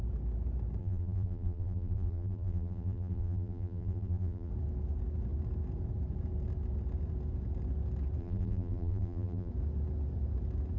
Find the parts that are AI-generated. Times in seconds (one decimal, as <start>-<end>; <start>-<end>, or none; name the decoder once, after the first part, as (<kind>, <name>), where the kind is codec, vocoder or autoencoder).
0.8-4.5 (vocoder, BigVGAN v2); 8.2-9.5